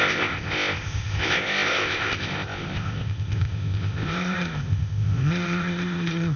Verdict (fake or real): fake